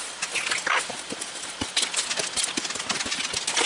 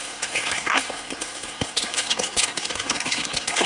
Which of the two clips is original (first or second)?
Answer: first